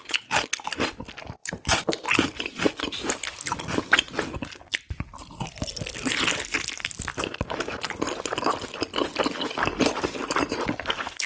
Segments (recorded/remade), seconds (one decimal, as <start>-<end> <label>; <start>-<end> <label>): 0.0-1.4 recorded; 1.4-2.6 remade; 2.6-7.1 recorded; 7.1-8.0 remade; 8.0-11.3 recorded